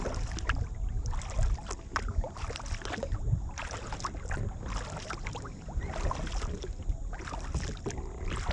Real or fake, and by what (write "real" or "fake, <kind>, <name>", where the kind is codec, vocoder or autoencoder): real